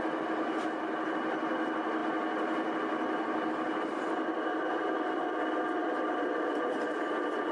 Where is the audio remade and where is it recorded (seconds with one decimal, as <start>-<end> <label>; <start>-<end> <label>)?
0.0-5.8 recorded; 5.8-6.8 remade; 6.8-7.5 recorded